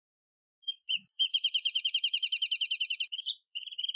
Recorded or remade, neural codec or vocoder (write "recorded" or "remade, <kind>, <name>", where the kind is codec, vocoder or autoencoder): remade, vocoder, BigVGAN v2